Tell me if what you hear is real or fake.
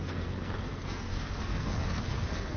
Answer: fake